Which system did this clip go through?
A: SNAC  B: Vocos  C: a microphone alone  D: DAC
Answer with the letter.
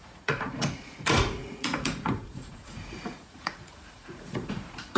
B